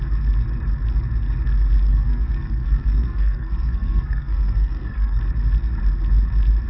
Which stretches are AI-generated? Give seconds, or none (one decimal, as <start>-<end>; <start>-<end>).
1.9-5.2